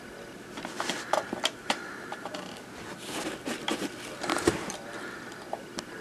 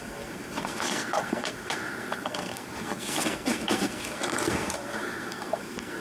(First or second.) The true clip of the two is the first